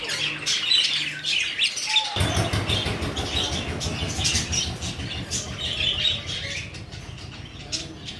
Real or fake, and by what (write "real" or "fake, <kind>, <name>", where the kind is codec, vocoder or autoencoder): real